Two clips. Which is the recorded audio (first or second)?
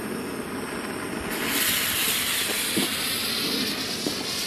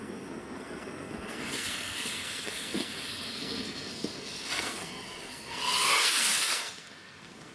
first